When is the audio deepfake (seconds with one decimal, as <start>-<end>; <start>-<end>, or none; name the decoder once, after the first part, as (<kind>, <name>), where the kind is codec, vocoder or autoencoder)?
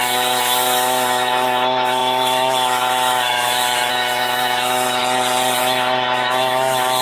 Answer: 0.0-5.0 (autoencoder, DAC-VAE); 5.6-7.0